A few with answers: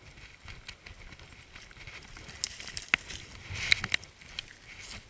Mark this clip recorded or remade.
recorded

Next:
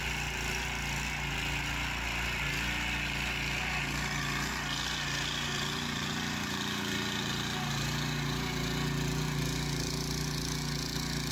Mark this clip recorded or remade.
recorded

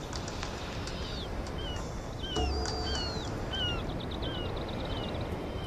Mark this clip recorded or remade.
recorded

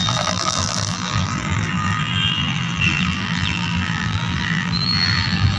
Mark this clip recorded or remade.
remade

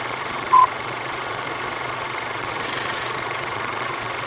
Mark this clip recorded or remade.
remade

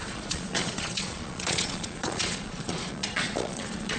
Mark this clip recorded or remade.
remade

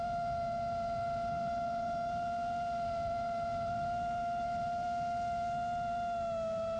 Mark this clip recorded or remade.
recorded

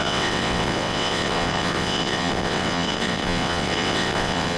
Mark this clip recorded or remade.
remade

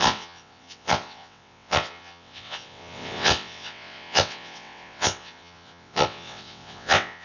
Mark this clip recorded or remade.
remade